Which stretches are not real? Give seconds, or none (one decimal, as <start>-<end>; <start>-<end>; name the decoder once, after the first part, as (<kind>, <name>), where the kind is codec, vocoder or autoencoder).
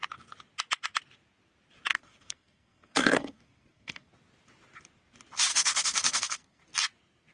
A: 1.9-4.1 (codec, SNAC); 5.5-6.6